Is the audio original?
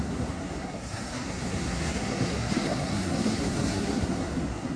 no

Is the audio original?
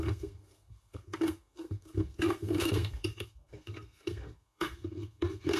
no